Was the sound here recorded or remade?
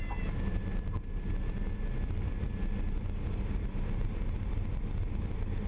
recorded